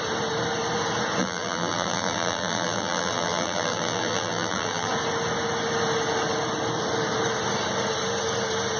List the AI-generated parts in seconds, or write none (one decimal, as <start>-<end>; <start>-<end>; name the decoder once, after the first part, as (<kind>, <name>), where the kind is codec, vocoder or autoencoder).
1.2-4.9 (vocoder, BigVGAN v2)